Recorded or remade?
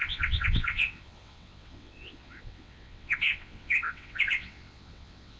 remade